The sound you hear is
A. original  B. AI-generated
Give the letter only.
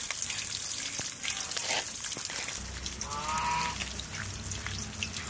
A